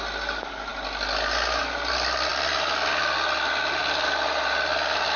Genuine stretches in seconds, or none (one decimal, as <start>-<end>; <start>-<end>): 0.0-5.2